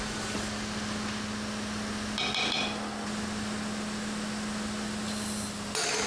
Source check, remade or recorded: recorded